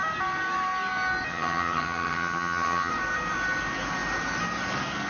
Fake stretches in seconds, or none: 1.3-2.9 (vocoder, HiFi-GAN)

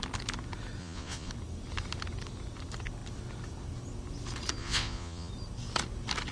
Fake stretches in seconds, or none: 0.8-1.3 (vocoder, Vocos); 4.6-5.3

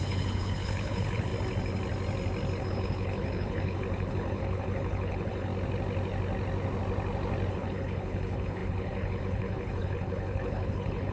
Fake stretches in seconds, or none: 0.0-1.3 (codec, HILCodec); 2.6-5.5; 7.5-11.1

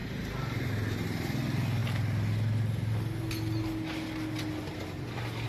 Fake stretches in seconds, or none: 0.0-0.7 (vocoder, BigVGAN v2)

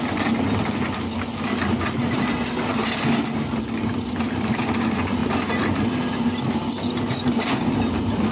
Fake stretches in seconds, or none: none

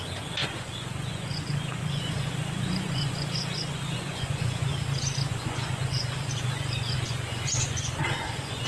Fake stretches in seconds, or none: 0.0-4.7 (vocoder, Vocos); 5.3-8.7

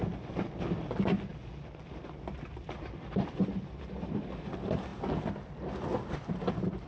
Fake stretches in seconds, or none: none